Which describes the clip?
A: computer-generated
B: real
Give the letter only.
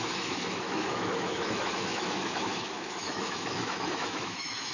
A